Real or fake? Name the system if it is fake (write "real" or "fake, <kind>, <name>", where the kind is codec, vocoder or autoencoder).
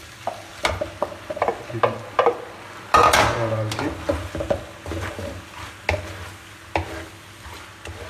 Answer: real